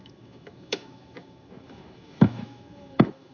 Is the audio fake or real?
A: fake